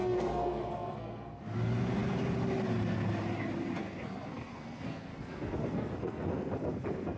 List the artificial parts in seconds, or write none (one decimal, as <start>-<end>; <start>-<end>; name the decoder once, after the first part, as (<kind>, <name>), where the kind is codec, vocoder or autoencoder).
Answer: 0.0-1.4 (codec, SNAC); 3.8-7.2